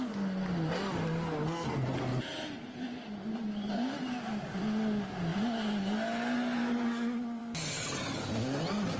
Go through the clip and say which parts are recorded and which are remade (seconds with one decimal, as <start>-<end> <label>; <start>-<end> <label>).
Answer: 0.0-2.1 recorded; 2.1-4.6 remade; 4.6-7.4 recorded; 7.4-8.0 remade; 8.0-9.0 recorded